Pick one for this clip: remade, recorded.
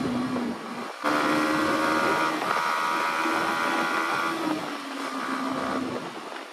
recorded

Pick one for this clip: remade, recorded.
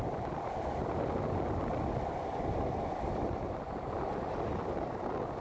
recorded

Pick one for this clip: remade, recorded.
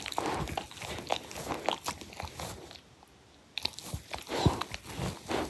recorded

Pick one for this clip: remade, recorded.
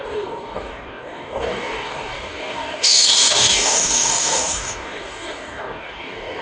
remade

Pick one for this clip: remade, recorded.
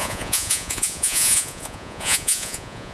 remade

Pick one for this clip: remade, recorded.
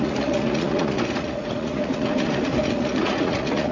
remade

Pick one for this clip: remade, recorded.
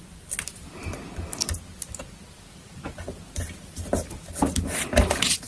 recorded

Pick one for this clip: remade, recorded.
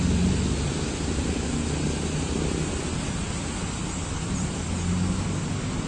recorded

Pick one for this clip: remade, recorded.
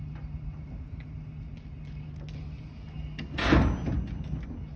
recorded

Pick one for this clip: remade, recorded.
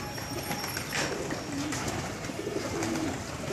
remade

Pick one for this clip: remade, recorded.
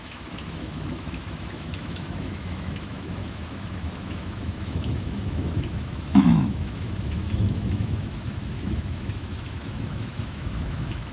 remade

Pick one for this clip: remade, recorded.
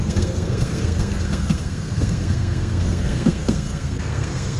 remade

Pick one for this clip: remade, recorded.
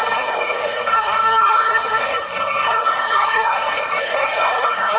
remade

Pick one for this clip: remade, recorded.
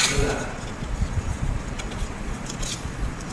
remade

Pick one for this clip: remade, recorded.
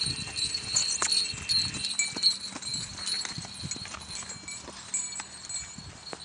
recorded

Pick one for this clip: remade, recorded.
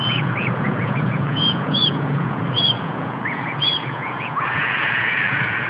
remade